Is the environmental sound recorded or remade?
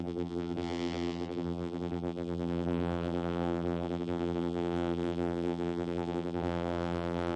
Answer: remade